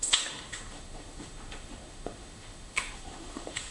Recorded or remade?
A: remade